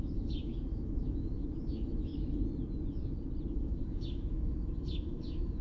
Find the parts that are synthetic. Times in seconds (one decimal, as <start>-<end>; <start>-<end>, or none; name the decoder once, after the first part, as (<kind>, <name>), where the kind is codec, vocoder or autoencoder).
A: 0.0-2.1 (autoencoder, DAC-VAE); 3.5-5.6